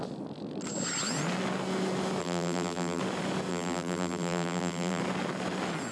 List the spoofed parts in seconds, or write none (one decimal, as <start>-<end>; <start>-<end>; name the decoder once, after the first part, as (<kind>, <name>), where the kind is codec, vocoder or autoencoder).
2.2-3.0 (vocoder, BigVGAN v2); 3.5-5.0